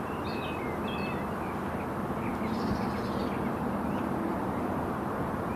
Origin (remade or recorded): recorded